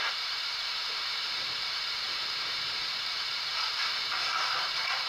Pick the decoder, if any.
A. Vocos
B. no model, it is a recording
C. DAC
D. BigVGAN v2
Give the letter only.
D